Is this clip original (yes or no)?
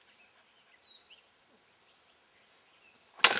yes